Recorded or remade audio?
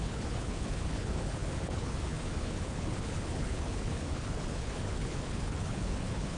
remade